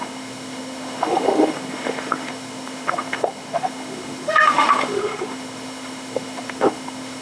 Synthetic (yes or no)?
yes